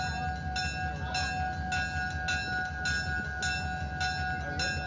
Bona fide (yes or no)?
yes